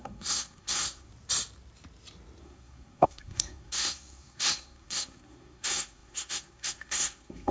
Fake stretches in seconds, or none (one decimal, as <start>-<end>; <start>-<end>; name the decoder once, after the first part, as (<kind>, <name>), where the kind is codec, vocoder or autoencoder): 0.0-1.1 (codec, SNAC); 2.4-7.5